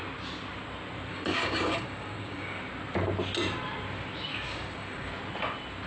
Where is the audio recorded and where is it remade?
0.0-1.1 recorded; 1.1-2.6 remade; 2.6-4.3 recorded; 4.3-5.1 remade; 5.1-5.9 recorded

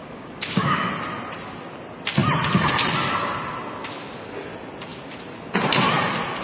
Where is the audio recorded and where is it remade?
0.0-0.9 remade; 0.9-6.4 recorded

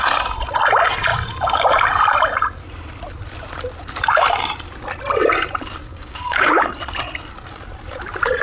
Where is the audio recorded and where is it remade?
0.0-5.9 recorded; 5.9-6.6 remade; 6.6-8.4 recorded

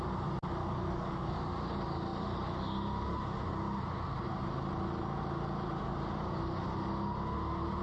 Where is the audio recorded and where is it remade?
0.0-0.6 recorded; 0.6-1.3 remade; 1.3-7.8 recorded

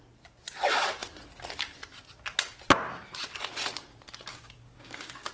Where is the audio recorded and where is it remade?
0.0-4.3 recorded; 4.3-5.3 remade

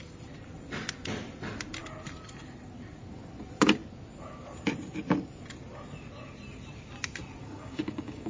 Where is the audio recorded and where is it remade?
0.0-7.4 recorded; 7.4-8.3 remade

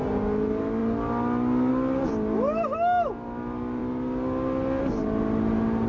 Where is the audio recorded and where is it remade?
0.0-5.9 recorded

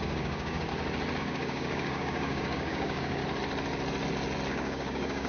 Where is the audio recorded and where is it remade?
0.0-0.7 remade; 0.7-1.2 recorded; 1.2-3.2 remade; 3.2-4.5 recorded; 4.5-5.3 remade